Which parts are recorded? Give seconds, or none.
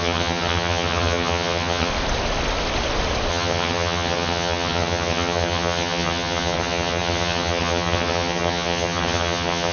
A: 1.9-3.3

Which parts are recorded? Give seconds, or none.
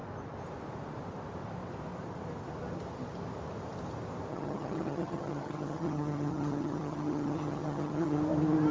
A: 0.0-4.3; 8.2-8.7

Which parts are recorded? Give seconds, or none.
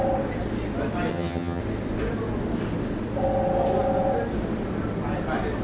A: 0.0-1.1; 1.6-5.6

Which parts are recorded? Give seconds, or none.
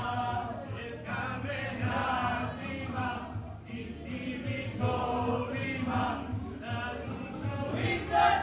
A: 0.0-8.4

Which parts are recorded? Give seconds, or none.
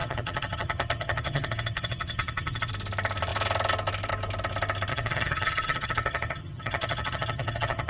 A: 2.7-4.9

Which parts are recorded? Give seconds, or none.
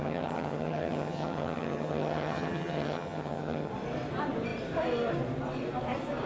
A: 3.7-6.3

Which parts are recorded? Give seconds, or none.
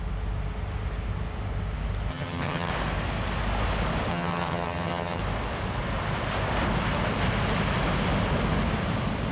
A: 0.0-2.1; 2.7-4.1; 5.2-9.3